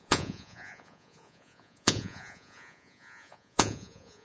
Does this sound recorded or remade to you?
remade